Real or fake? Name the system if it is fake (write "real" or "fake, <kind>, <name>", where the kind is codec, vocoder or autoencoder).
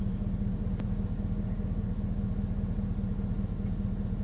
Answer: real